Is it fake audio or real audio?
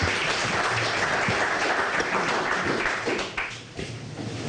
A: real